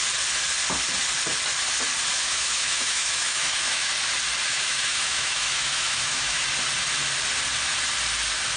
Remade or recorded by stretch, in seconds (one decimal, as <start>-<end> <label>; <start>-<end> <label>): 0.0-2.1 recorded; 2.1-3.9 remade; 3.9-4.5 recorded; 4.5-6.4 remade; 6.4-8.6 recorded